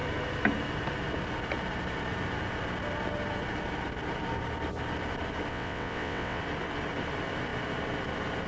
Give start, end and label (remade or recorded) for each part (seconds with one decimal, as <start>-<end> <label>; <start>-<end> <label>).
0.0-5.5 recorded; 5.5-6.4 remade; 6.4-8.5 recorded